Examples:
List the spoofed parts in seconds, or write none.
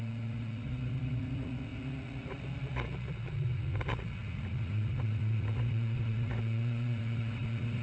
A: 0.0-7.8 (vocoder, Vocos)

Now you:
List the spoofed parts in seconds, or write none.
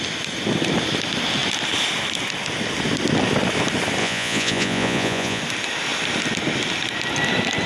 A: 4.0-5.4 (vocoder, Vocos)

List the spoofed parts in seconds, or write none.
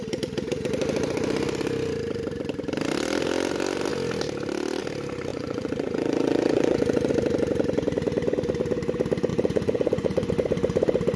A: 5.3-7.1 (vocoder, Vocos); 9.3-10.3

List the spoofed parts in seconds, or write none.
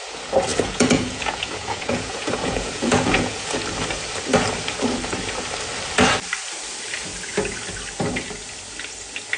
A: 0.5-3.6 (vocoder, Vocos)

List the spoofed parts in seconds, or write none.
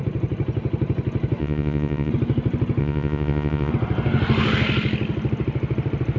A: 1.4-2.1 (vocoder, Vocos); 2.8-3.7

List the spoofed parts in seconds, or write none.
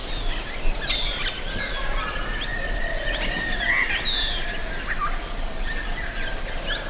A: none